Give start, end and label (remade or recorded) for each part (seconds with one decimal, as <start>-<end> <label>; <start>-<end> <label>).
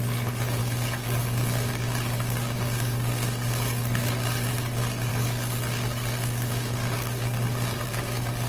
0.0-0.6 recorded; 0.6-4.5 remade; 4.5-5.1 recorded; 5.1-8.5 remade